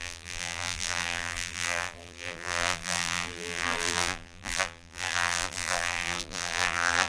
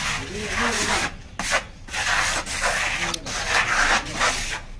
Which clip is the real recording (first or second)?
second